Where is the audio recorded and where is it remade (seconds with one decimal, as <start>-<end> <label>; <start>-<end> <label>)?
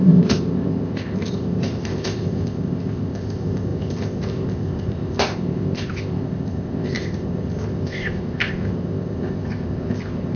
0.0-10.4 remade